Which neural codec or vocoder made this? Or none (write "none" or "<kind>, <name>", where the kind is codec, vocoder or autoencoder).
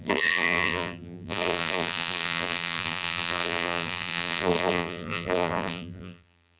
vocoder, BigVGAN v2